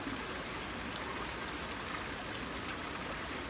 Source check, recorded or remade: recorded